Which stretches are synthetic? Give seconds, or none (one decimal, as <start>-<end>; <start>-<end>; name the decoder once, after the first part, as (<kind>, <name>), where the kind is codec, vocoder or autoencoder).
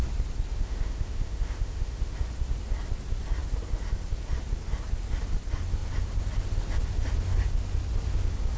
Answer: 0.5-2.1 (autoencoder, DAC-VAE)